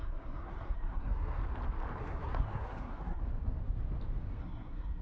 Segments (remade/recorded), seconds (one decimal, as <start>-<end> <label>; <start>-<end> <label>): 0.0-1.4 remade; 1.4-2.0 recorded; 2.0-3.2 remade; 3.2-4.4 recorded; 4.4-5.0 remade